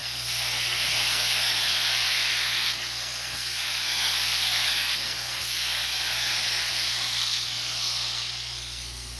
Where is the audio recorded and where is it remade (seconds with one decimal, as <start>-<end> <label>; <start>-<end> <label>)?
0.0-9.2 remade